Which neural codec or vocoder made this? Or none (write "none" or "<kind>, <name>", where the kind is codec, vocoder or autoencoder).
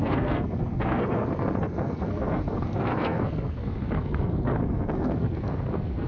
codec, SNAC